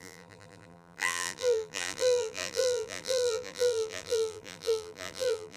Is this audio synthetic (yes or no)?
yes